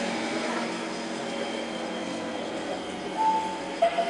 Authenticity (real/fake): fake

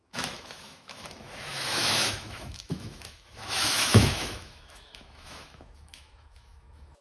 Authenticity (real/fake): fake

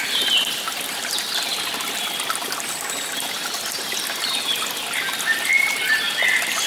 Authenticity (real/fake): real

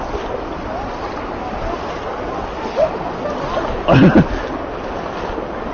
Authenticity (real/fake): real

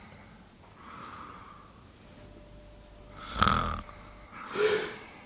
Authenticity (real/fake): real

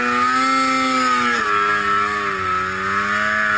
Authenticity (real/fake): real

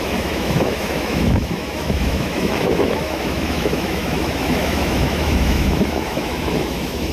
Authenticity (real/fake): fake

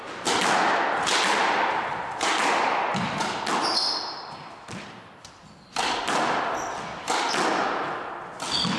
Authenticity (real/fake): real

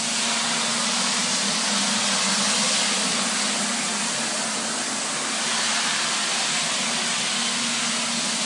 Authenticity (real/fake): real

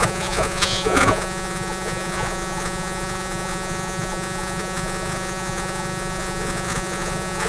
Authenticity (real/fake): fake